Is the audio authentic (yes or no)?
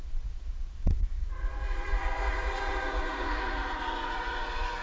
no